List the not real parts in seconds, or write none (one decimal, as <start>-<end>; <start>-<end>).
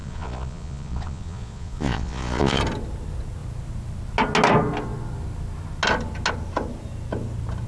0.0-2.6